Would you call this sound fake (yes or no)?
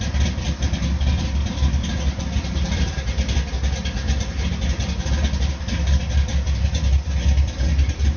no